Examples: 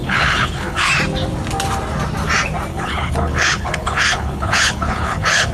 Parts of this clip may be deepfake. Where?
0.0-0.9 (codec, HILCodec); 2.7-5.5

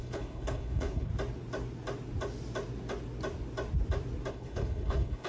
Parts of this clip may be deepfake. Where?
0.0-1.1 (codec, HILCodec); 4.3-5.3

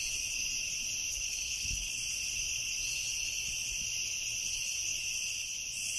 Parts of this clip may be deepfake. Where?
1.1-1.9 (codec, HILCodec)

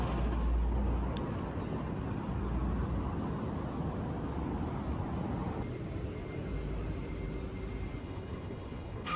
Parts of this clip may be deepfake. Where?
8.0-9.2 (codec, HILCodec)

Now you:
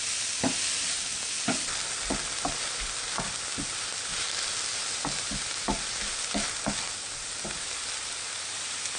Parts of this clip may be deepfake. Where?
none

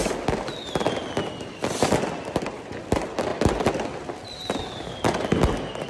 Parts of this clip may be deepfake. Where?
none

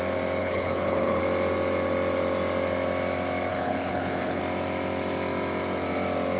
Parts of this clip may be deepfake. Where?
0.4-1.2 (codec, HILCodec); 3.5-4.4

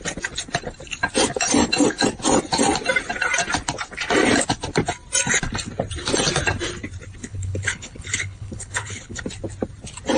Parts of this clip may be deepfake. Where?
7.2-9.2 (codec, HILCodec)